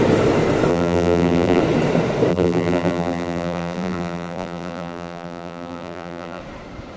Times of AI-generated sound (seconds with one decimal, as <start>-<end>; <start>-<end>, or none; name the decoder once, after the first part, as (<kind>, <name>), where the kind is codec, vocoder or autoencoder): 0.7-1.6 (vocoder, BigVGAN v2); 2.3-6.4